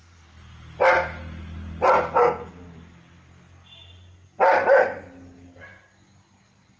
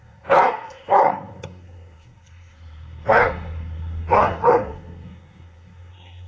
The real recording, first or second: first